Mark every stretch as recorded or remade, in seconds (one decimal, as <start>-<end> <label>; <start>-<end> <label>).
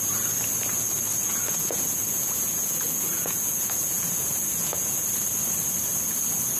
0.0-1.1 recorded; 1.1-5.1 remade; 5.1-6.6 recorded